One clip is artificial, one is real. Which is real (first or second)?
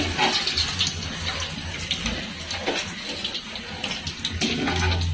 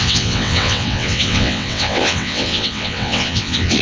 first